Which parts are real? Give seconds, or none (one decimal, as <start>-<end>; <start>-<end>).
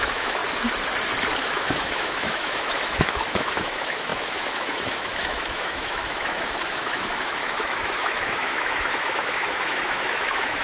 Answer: 0.4-1.4